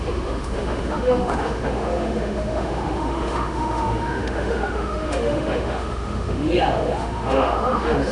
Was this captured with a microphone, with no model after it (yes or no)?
no